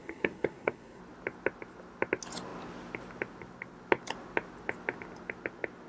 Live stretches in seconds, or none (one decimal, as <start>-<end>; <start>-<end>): 1.0-5.9